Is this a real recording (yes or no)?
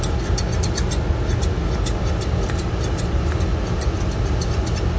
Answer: yes